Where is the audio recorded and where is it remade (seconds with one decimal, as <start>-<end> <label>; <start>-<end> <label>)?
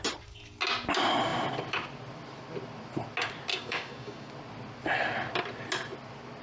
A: 0.0-3.5 recorded; 3.5-4.3 remade; 4.3-6.4 recorded